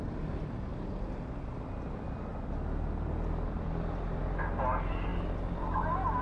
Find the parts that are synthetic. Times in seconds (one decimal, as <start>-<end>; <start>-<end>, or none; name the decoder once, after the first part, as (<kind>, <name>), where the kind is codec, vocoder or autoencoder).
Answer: none